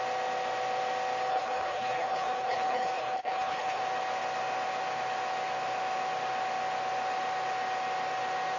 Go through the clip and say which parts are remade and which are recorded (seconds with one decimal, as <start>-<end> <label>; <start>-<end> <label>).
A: 0.0-1.3 recorded; 1.3-3.8 remade; 3.8-8.6 recorded

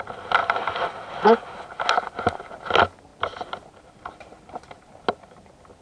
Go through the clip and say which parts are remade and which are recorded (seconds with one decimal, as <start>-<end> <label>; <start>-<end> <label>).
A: 0.0-0.4 recorded; 0.4-1.1 remade; 1.1-5.8 recorded

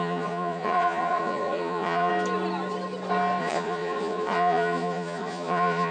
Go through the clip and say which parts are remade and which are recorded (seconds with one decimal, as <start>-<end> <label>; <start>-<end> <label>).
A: 0.0-2.1 remade; 2.1-3.4 recorded; 3.4-5.9 remade

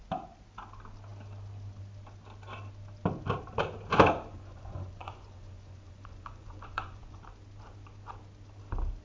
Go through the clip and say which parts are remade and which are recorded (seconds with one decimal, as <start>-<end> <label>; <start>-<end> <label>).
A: 0.0-4.3 recorded; 4.3-7.2 remade; 7.2-9.0 recorded